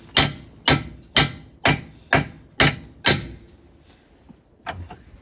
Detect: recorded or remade recorded